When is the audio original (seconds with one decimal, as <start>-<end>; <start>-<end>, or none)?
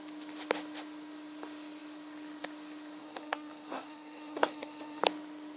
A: 0.0-3.0; 5.0-5.6